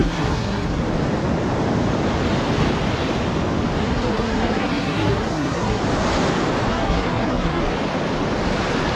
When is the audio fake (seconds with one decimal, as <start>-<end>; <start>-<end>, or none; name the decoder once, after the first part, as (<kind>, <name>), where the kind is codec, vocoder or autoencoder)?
0.0-0.8 (codec, SNAC); 3.8-5.8; 6.7-7.6